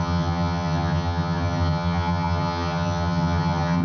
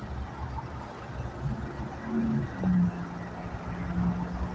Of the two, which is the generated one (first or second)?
first